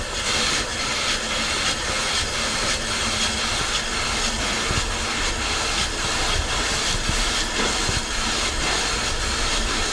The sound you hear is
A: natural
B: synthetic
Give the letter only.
A